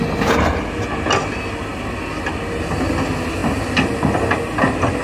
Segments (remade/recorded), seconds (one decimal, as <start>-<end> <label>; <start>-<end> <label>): 0.0-5.0 recorded